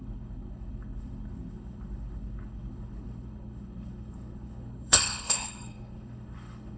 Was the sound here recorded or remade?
remade